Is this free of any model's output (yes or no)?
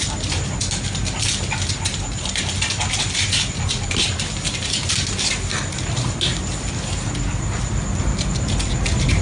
yes